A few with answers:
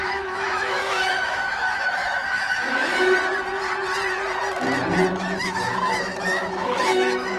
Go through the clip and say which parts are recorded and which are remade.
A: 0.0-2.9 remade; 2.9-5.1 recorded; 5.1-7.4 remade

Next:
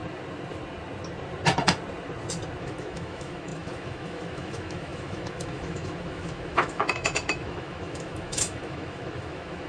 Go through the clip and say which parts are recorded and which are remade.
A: 0.0-2.6 recorded; 2.6-9.7 remade

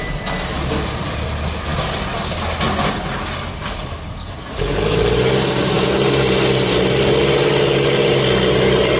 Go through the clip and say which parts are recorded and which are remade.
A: 0.0-9.0 recorded

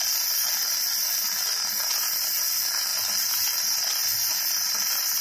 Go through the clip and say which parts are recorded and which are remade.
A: 0.0-5.2 recorded

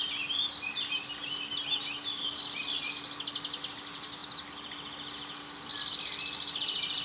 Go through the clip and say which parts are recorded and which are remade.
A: 0.0-7.0 recorded

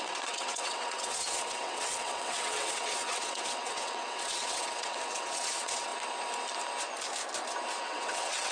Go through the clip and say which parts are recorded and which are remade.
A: 0.0-5.9 remade; 5.9-7.8 recorded; 7.8-8.5 remade